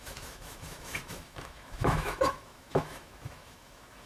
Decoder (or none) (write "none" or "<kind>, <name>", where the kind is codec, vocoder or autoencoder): autoencoder, DAC-VAE